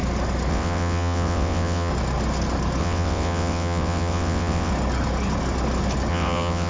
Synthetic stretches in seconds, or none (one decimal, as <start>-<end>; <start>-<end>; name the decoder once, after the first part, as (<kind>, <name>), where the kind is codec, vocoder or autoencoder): 0.5-1.9 (vocoder, WaveNeXt); 2.8-4.7; 6.1-6.7